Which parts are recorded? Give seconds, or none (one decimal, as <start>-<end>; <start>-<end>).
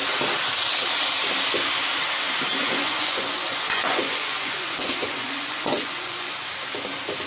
0.0-2.6; 6.5-7.3